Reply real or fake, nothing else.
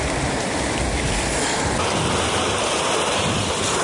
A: real